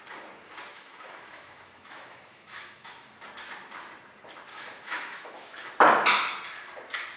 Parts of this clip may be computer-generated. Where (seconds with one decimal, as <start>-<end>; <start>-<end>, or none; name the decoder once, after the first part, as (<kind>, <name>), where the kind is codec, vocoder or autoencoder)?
0.7-3.2 (autoencoder, DAC-VAE); 4.5-5.7